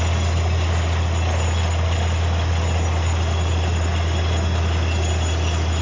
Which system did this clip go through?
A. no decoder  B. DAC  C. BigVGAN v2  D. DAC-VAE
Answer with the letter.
A